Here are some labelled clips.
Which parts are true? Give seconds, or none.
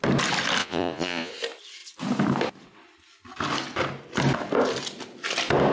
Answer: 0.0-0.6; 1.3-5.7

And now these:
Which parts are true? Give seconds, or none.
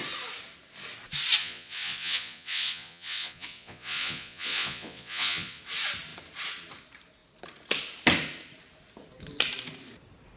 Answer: 0.0-1.4; 5.6-10.4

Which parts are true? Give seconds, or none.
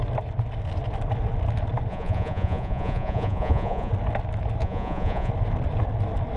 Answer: 0.0-1.9; 3.9-4.6; 5.3-6.4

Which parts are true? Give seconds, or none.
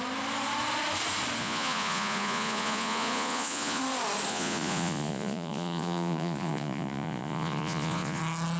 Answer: 0.0-1.4; 3.8-4.3; 8.2-8.6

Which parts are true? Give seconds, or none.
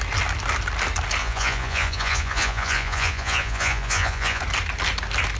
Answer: 0.0-1.2; 4.4-5.4